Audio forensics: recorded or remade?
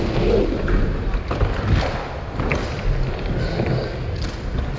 recorded